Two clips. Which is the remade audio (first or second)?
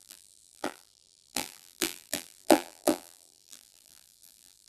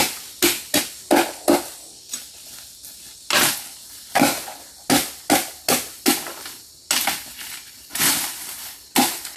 first